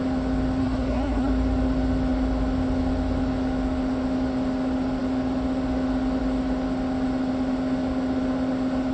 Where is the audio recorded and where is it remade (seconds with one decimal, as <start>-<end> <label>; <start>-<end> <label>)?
0.0-0.6 recorded; 0.6-1.3 remade; 1.3-8.9 recorded